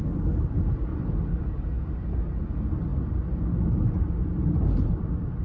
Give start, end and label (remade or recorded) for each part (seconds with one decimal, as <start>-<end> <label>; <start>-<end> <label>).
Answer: 0.0-5.4 recorded